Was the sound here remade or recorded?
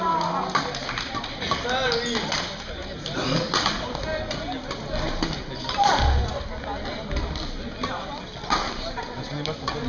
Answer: recorded